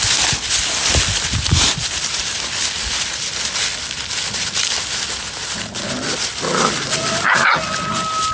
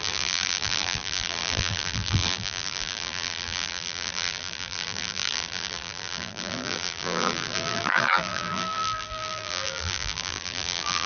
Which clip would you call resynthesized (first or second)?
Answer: second